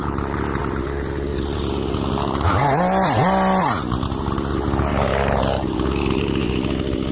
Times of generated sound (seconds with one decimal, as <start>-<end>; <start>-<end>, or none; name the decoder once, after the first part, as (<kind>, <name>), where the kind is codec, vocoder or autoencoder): none